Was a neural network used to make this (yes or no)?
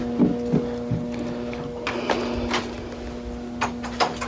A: no